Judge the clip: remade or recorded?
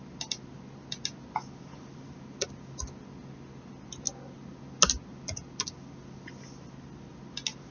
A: recorded